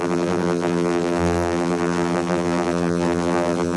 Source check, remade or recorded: remade